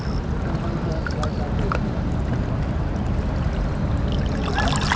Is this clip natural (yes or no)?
yes